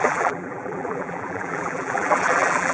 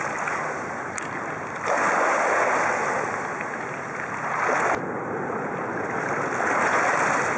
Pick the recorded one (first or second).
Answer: second